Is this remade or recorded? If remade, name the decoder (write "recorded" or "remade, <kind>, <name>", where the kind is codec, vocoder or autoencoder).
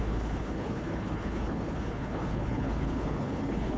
remade, codec, HILCodec